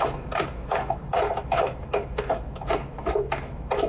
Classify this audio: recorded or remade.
remade